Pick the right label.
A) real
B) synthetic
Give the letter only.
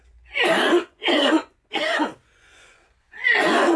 B